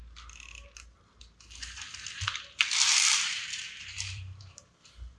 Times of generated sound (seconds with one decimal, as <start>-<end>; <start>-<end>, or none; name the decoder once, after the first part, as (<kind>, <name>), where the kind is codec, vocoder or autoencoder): 2.9-4.6 (vocoder, BigVGAN v2)

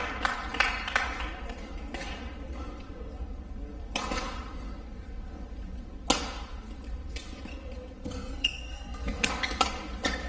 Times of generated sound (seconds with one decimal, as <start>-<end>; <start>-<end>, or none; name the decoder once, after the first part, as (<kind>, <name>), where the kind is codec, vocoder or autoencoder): 8.0-9.3 (codec, SNAC)

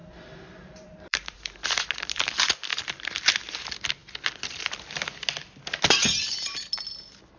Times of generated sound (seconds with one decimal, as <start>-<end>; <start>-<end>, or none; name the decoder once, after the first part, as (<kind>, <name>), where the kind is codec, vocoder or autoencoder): 0.0-1.8 (vocoder, BigVGAN v2)

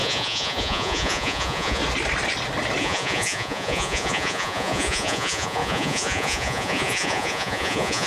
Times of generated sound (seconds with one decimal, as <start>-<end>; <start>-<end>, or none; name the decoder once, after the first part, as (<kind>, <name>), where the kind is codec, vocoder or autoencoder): 0.0-1.8 (vocoder, Vocos); 2.8-8.1

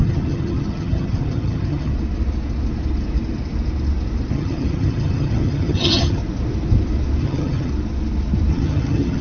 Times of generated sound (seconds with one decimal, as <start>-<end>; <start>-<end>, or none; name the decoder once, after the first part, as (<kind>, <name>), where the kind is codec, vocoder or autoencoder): 0.0-1.9 (vocoder, HiFi-GAN); 4.3-6.2; 7.2-7.7; 8.5-9.2

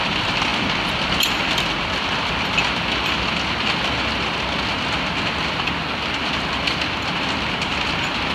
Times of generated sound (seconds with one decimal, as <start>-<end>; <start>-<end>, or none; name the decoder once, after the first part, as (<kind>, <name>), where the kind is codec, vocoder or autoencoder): none